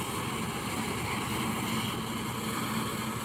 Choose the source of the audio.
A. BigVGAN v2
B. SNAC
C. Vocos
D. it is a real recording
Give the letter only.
D